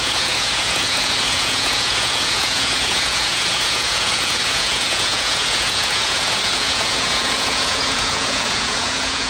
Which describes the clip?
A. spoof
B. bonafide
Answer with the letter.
A